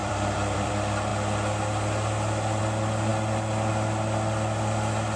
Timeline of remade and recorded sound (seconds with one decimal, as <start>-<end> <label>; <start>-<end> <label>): 0.0-0.7 remade; 0.7-5.2 recorded